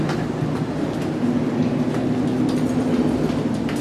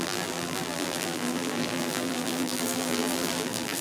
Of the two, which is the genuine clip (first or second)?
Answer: first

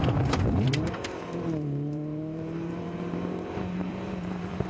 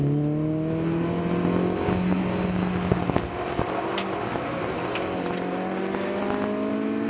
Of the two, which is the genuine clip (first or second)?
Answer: second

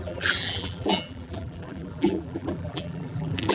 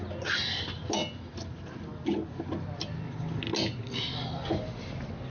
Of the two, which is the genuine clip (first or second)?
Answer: second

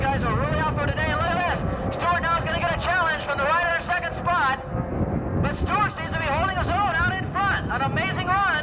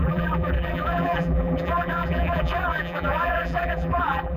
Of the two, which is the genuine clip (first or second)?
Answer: first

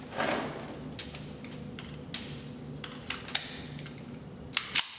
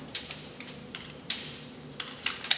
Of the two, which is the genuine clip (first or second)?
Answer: first